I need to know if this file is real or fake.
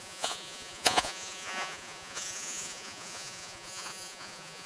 fake